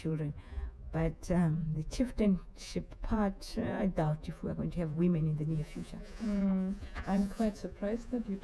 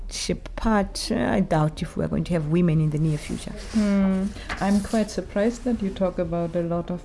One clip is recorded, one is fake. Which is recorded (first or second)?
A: second